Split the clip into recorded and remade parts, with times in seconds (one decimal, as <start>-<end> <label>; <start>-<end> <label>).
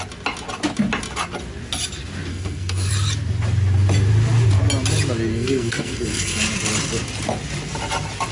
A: 0.0-2.3 recorded; 2.3-2.9 remade; 2.9-5.3 recorded; 5.3-6.4 remade; 6.4-8.3 recorded